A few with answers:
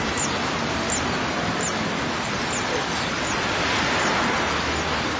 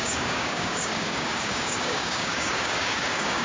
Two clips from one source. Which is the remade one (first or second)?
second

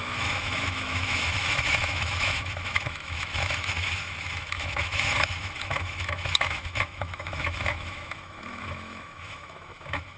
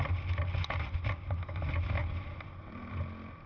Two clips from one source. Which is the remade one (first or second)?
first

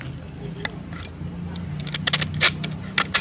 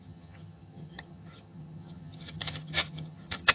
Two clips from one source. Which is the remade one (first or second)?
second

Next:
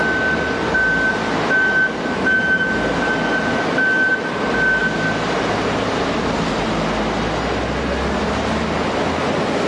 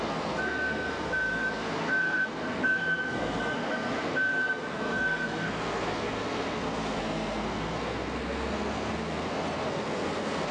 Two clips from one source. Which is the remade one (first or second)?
second